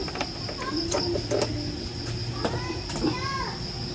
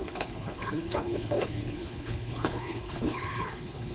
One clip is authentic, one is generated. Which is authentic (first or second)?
first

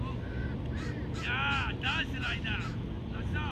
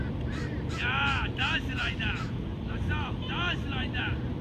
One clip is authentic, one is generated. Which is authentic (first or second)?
first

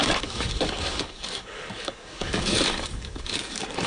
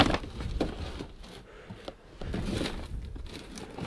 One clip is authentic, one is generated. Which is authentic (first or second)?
second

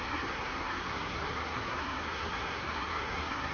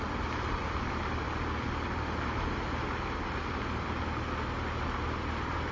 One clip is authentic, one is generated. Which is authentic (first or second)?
second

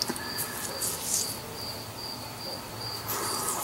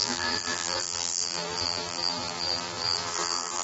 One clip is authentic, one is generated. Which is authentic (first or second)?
first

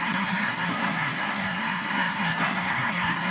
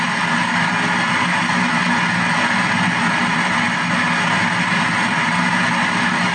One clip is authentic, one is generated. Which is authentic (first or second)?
second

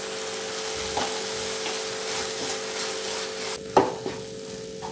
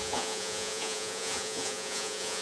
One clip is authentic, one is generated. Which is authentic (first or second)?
first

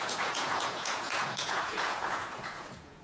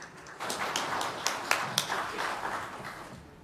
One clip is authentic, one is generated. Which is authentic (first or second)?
second